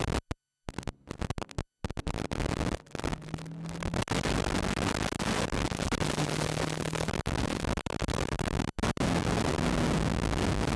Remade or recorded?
recorded